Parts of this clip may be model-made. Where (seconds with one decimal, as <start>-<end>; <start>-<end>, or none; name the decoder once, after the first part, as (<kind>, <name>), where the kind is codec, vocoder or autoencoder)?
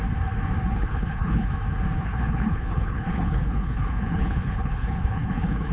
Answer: 0.7-1.5 (codec, HILCodec); 2.0-5.7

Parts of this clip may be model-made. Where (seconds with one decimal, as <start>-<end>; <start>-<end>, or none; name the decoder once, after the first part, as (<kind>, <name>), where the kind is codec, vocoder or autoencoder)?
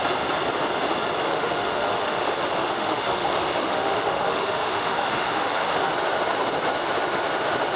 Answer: 1.3-5.9 (autoencoder, DAC-VAE)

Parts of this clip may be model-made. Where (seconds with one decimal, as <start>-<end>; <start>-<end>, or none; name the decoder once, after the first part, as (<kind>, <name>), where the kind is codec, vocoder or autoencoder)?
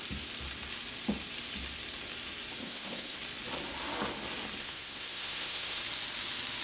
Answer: 2.6-3.2 (codec, SNAC); 4.6-5.8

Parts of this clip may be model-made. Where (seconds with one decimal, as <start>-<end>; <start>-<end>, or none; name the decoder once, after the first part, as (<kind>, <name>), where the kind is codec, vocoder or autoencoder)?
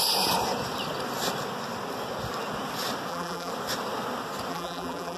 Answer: 3.1-3.5 (vocoder, BigVGAN v2); 4.5-5.2